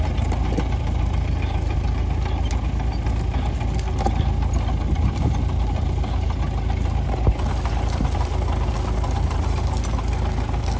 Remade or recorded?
recorded